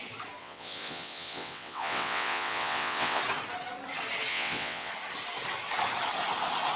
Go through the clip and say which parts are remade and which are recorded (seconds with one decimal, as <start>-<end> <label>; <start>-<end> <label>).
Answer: 0.0-0.4 recorded; 0.4-3.2 remade; 3.2-4.3 recorded; 4.3-4.9 remade; 4.9-6.8 recorded